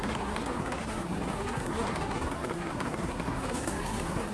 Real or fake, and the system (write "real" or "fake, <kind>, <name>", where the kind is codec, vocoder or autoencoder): fake, codec, SNAC